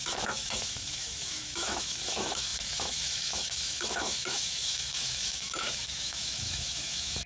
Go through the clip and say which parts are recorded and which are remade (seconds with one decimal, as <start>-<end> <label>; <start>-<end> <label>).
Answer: 0.0-7.3 remade